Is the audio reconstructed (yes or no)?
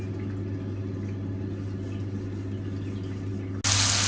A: no